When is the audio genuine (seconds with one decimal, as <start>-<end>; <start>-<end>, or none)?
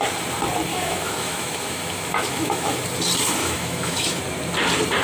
0.0-0.7; 2.8-3.4; 4.2-5.0